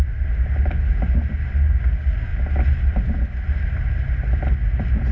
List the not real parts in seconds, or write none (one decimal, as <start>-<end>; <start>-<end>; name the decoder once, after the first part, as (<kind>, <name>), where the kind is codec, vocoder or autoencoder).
none